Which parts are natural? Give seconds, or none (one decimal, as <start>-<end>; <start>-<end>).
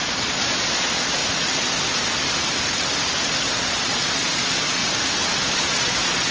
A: 1.2-3.4; 4.8-5.4